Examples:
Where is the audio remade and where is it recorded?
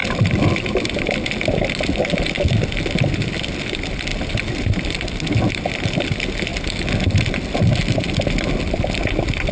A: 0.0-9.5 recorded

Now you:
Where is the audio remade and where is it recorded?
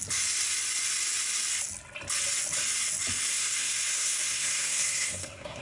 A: 0.0-3.3 recorded; 3.3-5.6 remade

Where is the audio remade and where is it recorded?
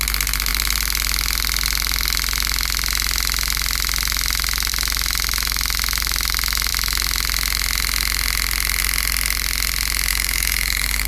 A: 0.0-10.1 recorded; 10.1-11.1 remade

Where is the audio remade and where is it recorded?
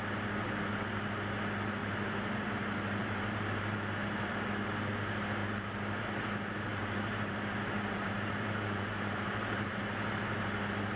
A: 0.0-1.8 recorded; 1.8-2.4 remade; 2.4-3.0 recorded; 3.0-4.2 remade; 4.2-5.4 recorded; 5.4-6.0 remade; 6.0-6.7 recorded; 6.7-9.7 remade; 9.7-11.0 recorded